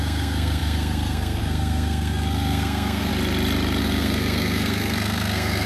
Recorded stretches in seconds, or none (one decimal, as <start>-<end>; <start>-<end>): 3.1-3.8